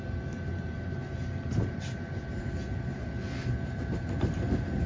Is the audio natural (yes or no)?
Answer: yes